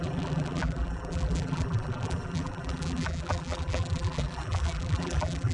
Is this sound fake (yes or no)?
yes